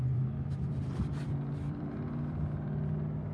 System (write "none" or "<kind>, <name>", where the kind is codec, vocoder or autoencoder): vocoder, BigVGAN v2